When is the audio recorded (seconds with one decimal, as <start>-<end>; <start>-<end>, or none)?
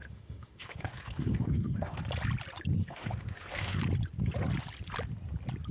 2.0-2.8; 3.8-5.7